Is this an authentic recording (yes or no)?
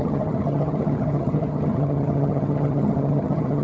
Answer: no